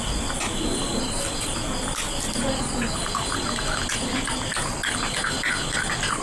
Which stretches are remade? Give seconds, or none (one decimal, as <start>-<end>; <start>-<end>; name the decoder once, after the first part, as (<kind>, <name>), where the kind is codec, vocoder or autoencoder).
none